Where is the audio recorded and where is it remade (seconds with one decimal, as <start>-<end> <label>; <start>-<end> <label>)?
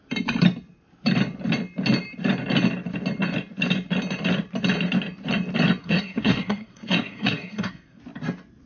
0.0-5.8 recorded; 5.8-8.0 remade; 8.0-8.7 recorded